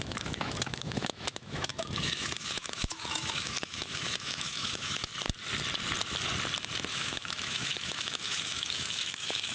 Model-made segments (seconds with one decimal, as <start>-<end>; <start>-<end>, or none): 0.0-5.1; 6.9-9.5